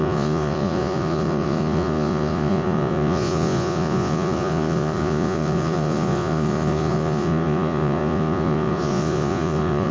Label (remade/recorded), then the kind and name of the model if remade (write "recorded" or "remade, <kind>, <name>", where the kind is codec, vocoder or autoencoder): remade, vocoder, Vocos